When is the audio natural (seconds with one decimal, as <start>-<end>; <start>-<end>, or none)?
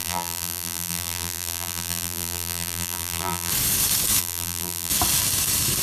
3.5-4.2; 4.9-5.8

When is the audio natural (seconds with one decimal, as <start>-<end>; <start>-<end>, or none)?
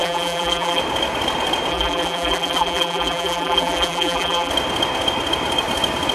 0.8-1.7; 4.5-6.1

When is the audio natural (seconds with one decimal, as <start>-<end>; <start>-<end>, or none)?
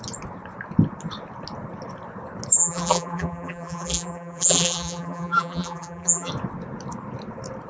0.0-2.6; 6.3-7.7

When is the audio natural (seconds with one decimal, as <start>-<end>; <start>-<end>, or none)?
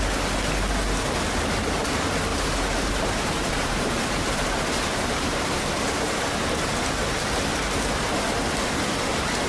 0.0-2.3; 6.2-9.5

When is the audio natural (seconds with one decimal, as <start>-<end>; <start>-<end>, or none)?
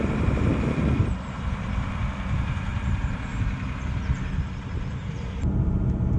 0.5-1.0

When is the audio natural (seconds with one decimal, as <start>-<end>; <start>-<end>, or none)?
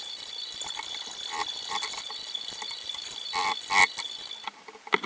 0.0-5.1